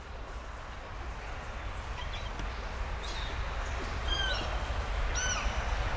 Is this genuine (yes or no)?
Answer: yes